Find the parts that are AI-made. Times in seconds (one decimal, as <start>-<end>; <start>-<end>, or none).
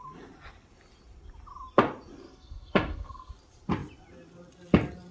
2.2-3.3